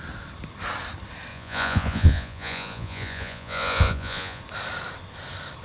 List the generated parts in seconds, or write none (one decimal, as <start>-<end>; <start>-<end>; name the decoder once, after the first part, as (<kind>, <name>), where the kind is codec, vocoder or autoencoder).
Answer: 1.3-4.4 (vocoder, Vocos)